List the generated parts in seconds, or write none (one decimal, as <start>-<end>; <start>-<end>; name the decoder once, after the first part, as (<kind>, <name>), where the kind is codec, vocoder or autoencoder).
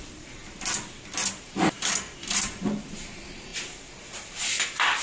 0.0-0.4 (vocoder, BigVGAN v2); 1.4-5.0